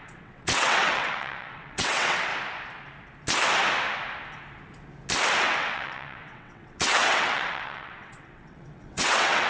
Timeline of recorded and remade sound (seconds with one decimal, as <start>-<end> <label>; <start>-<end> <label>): 0.0-2.3 remade; 2.3-5.4 recorded; 5.4-9.5 remade